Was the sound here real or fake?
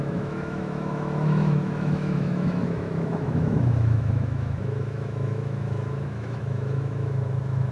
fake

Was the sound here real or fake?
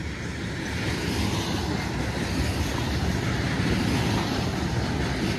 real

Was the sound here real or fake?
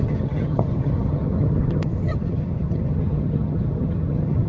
fake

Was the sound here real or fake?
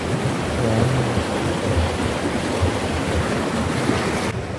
real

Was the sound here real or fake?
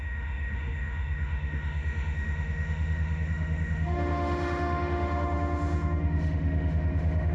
fake